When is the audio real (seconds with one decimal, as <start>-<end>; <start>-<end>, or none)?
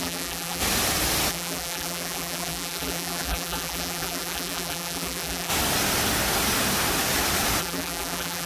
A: 0.6-1.3; 5.5-7.6